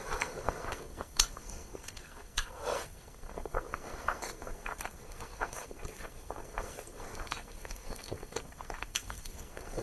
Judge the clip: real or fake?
fake